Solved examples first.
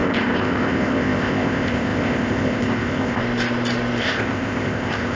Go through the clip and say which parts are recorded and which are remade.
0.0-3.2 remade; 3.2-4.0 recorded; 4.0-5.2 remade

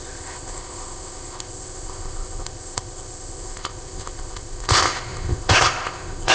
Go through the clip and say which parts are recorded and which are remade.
0.0-6.3 remade

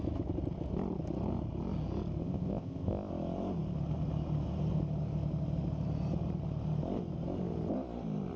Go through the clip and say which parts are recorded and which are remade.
0.0-2.2 recorded; 2.2-3.1 remade; 3.1-8.4 recorded